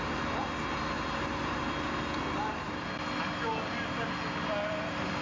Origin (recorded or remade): recorded